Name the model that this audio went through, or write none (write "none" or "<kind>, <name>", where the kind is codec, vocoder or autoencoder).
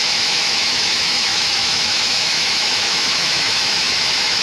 autoencoder, DAC-VAE